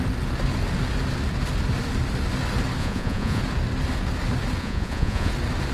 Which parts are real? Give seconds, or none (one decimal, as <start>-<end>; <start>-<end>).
0.0-2.8; 3.4-4.6; 5.3-5.7